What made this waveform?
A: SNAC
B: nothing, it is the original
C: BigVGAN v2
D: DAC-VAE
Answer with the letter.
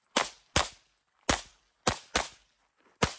B